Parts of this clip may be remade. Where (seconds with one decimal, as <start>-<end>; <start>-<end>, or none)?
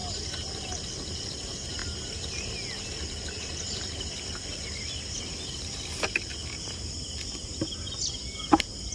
none